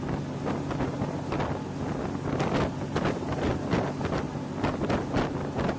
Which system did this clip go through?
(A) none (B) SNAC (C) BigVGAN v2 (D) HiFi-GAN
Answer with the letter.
A